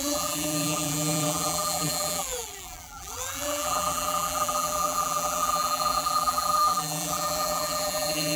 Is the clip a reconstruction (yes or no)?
yes